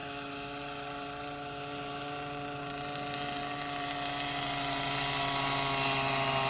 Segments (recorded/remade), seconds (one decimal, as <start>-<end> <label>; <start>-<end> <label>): 0.0-6.5 recorded